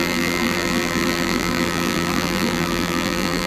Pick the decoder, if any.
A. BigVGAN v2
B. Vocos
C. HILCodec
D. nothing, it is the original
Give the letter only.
A